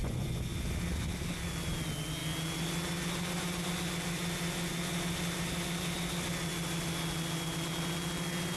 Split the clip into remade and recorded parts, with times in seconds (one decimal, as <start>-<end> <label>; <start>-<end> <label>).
0.0-0.5 remade; 0.5-8.6 recorded